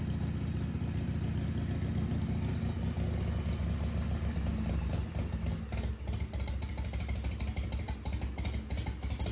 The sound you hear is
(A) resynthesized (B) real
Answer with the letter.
B